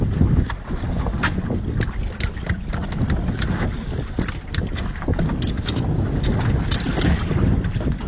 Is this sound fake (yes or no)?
no